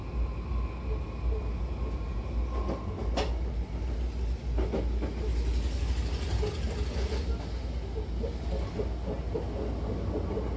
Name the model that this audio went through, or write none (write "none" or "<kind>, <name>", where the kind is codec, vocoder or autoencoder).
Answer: none